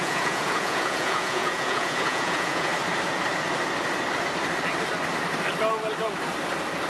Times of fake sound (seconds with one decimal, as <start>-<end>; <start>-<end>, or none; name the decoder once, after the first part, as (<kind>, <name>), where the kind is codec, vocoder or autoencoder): 0.0-2.7 (vocoder, Vocos)